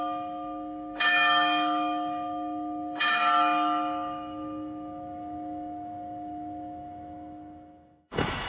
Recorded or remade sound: remade